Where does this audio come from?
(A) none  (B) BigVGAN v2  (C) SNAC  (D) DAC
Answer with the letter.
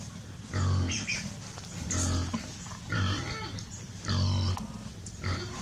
A